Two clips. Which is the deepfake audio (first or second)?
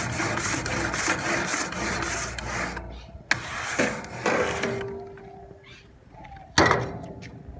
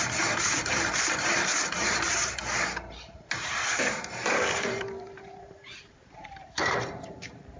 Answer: second